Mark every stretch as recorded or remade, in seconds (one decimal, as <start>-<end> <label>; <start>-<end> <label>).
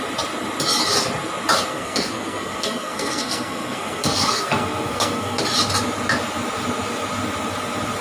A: 0.0-1.7 recorded; 1.7-5.4 remade; 5.4-8.0 recorded